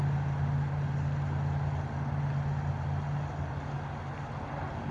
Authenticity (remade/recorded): recorded